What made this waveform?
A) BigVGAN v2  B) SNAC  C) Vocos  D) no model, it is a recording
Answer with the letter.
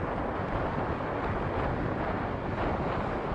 D